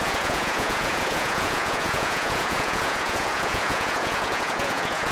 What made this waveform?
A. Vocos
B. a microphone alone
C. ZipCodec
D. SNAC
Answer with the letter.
A